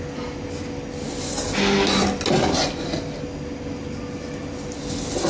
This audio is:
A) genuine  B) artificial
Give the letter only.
A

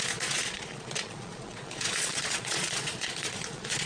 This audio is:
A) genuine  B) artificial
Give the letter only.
B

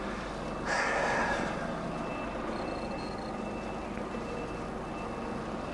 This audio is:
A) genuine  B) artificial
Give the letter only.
A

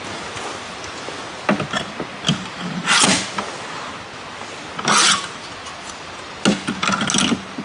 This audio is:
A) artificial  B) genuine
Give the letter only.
B